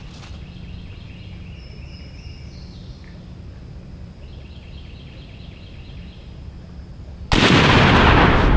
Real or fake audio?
real